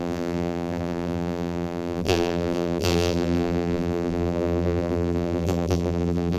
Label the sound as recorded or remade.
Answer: remade